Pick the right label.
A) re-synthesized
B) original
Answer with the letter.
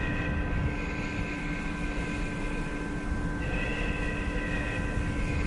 B